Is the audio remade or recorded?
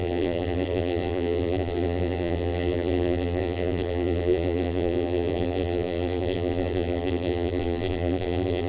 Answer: remade